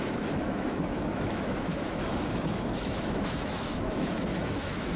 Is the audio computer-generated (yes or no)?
yes